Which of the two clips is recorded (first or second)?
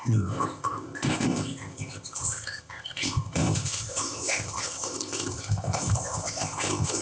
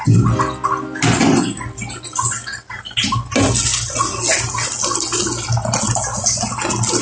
second